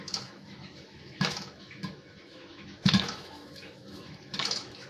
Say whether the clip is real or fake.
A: fake